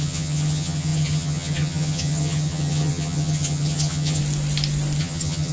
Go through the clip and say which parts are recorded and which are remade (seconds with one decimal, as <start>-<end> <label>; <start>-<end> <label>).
0.0-4.2 remade; 4.2-5.0 recorded; 5.0-5.5 remade